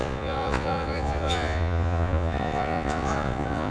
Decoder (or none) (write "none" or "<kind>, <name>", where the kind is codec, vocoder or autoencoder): vocoder, Vocos